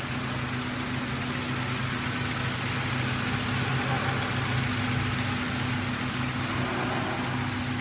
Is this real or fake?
real